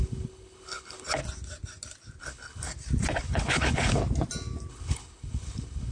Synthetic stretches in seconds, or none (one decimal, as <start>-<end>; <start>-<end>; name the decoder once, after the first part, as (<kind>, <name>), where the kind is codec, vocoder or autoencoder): 0.0-1.2 (codec, HILCodec); 2.2-2.7; 3.2-4.0; 4.7-5.9